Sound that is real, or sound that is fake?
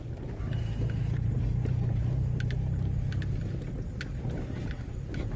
real